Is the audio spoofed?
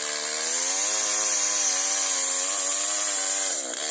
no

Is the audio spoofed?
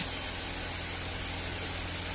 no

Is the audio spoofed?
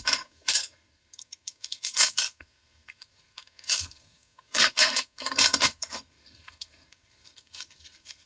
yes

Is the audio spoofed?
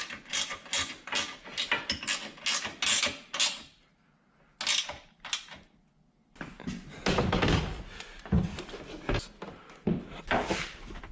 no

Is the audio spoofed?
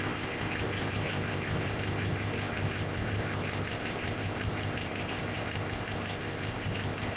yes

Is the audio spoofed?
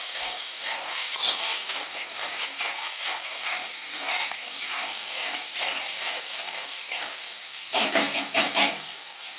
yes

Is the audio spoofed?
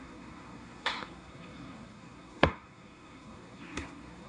yes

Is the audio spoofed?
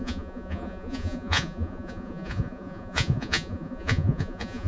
yes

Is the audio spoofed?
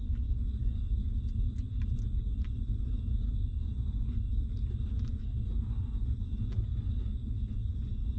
no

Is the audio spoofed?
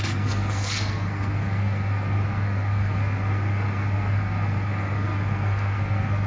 yes